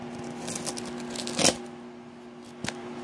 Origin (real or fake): real